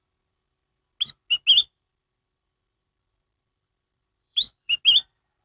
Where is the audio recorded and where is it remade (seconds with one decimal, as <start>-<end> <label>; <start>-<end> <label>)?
0.0-1.6 recorded; 1.6-4.8 remade; 4.8-5.4 recorded